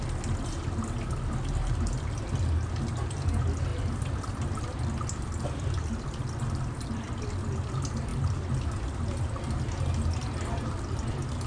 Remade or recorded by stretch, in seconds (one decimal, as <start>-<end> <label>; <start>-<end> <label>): 0.0-11.5 recorded